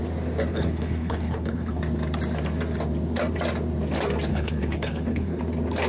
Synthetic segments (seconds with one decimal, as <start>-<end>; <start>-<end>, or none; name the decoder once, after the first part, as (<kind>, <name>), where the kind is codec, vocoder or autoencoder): 0.5-1.8 (codec, HILCodec); 4.3-5.4